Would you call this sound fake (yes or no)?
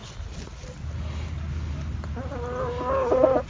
no